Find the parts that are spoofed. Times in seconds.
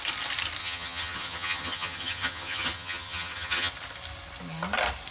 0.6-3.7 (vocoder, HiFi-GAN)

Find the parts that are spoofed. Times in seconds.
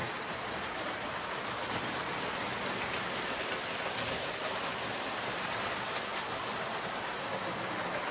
none